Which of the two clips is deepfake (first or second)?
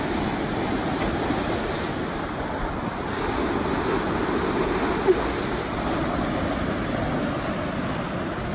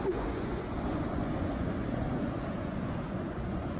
second